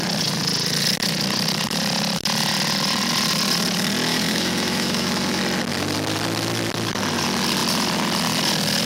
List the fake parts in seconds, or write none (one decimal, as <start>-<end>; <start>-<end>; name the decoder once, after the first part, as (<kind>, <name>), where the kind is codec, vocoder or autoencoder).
4.1-5.4 (autoencoder, DAC-VAE)